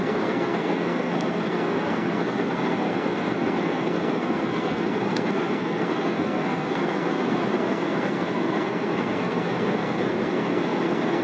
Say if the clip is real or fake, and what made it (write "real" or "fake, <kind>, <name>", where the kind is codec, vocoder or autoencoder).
fake, codec, SNAC